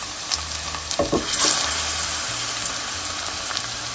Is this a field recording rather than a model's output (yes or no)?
yes